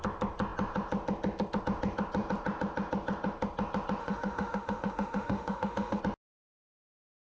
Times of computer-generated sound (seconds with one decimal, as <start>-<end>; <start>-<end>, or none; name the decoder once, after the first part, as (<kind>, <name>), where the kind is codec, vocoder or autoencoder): 4.0-6.0 (autoencoder, DAC-VAE)